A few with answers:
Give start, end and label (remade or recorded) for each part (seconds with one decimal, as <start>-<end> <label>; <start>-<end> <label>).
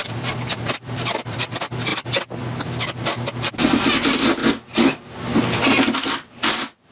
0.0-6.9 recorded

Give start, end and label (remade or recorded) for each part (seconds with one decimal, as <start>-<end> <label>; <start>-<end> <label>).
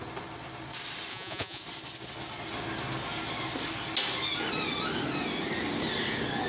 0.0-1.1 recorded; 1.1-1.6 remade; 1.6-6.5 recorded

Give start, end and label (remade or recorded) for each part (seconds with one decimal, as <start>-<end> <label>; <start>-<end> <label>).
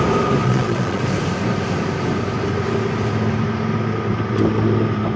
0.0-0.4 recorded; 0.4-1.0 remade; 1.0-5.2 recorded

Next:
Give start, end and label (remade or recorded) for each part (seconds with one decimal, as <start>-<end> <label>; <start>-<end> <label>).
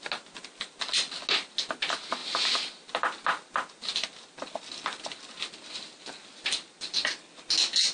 0.0-7.9 recorded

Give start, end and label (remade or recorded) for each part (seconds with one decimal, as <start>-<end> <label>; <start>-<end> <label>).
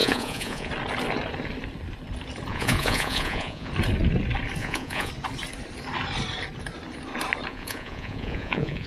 0.0-0.7 remade; 0.7-2.5 recorded; 2.5-3.7 remade; 3.7-4.6 recorded; 4.6-5.1 remade; 5.1-7.5 recorded; 7.5-8.9 remade